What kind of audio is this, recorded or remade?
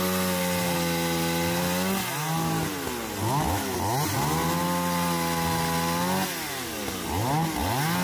recorded